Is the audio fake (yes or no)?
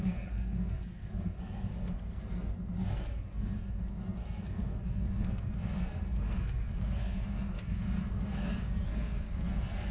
yes